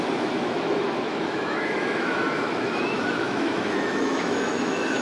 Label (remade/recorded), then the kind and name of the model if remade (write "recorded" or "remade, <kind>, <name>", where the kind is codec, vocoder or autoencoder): remade, autoencoder, DAC-VAE